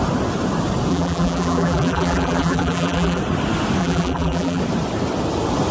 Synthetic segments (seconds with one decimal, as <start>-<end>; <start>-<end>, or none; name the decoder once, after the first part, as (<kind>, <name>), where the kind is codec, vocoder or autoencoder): 0.9-3.2 (vocoder, BigVGAN v2); 3.8-4.6